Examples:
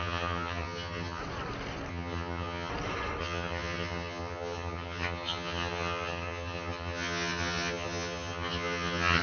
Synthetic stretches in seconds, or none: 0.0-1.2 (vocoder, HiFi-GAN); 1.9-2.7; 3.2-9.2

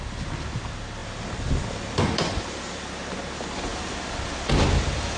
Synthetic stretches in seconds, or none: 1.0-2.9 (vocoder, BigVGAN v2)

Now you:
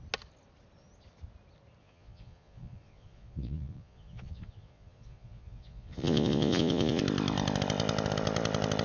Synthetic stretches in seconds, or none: 1.8-7.0 (vocoder, Vocos)

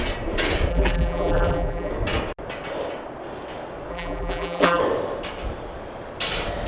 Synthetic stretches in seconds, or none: 0.7-1.9 (vocoder, BigVGAN v2); 3.9-4.8

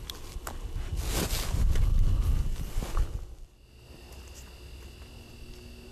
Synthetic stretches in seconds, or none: none

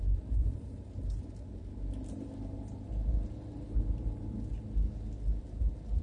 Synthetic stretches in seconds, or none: 0.0-4.5 (vocoder, BigVGAN v2); 5.4-6.0

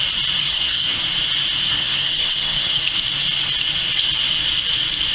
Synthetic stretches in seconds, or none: 0.4-1.0 (codec, SNAC); 1.7-2.8